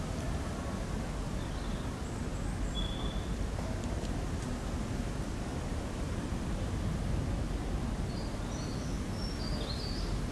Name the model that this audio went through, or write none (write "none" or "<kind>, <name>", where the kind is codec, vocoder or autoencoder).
none